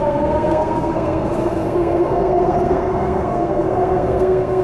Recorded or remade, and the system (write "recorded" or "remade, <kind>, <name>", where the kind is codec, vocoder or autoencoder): remade, codec, SNAC